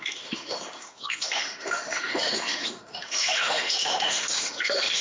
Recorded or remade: remade